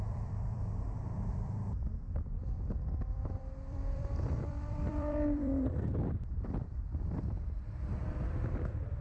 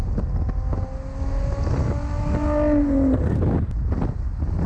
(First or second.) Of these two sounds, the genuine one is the second